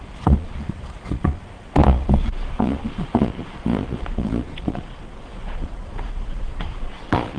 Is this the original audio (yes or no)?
no